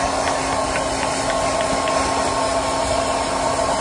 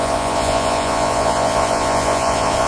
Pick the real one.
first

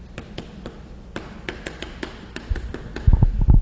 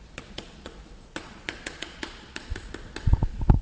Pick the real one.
first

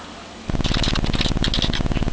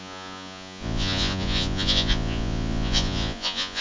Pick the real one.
first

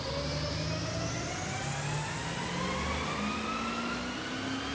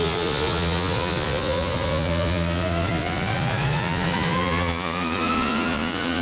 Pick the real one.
first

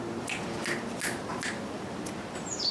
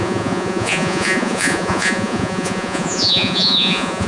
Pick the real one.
first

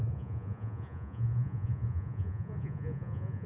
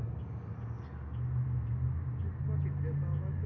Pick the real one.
second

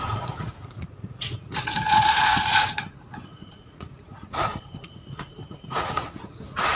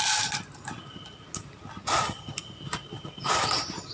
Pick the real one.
second